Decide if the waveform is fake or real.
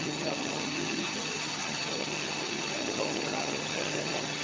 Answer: fake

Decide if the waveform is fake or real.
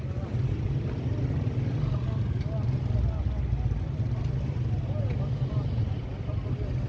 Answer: real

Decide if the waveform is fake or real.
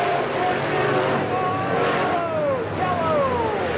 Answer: real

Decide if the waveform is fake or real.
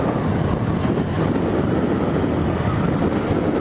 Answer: real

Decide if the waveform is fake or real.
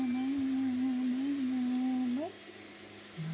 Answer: real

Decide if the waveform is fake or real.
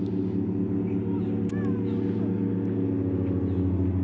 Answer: real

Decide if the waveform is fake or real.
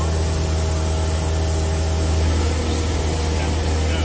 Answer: real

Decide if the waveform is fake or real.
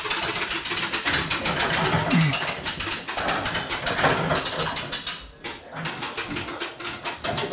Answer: real